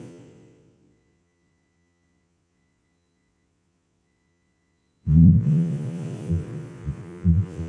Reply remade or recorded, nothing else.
remade